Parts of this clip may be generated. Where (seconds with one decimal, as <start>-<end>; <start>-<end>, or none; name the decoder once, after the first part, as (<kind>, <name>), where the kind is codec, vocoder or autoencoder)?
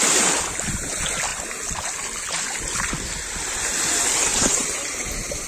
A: 4.3-5.1 (vocoder, BigVGAN v2)